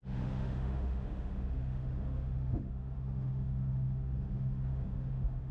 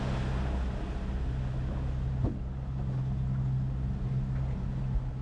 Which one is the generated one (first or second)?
first